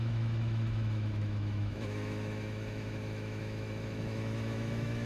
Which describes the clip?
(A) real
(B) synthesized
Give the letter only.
B